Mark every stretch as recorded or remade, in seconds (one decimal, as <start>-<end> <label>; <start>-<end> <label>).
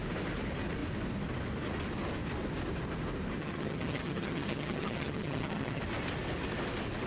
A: 0.0-3.4 recorded; 3.4-5.8 remade; 5.8-7.1 recorded